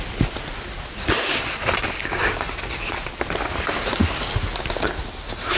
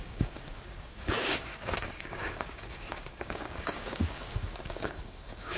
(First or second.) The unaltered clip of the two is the first